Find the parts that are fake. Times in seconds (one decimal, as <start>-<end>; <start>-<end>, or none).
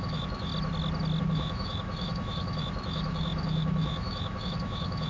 0.0-0.5; 1.2-5.1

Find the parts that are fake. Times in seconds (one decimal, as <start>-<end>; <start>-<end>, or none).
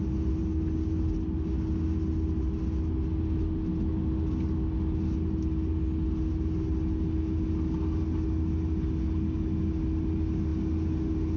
none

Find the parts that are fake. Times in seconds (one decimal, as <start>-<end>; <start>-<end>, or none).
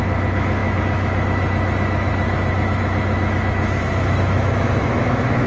0.0-5.5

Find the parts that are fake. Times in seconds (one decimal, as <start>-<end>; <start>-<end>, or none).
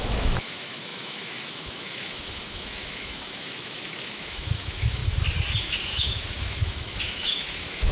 0.0-5.0; 5.6-7.9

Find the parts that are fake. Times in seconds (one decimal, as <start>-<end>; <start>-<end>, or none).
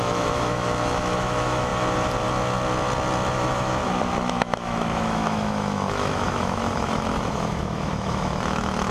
0.0-1.7; 3.4-3.8; 4.3-8.9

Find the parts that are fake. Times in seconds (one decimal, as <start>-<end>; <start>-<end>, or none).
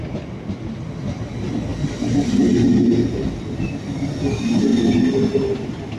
none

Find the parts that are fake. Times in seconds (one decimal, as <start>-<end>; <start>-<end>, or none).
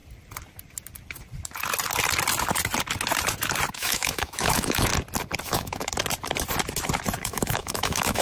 3.7-4.9; 5.4-5.9; 7.2-8.2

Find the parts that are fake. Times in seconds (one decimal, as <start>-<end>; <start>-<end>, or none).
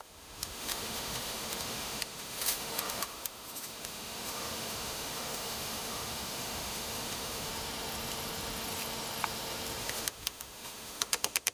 0.0-7.5; 9.8-11.5